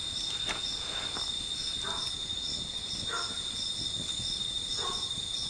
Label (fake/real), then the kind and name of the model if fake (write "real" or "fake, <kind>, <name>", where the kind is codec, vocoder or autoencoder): real